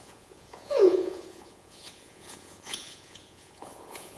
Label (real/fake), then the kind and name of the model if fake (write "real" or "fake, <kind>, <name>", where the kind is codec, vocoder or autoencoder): fake, vocoder, Vocos